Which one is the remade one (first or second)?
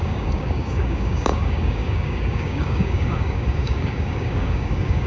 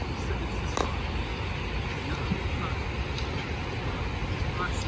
first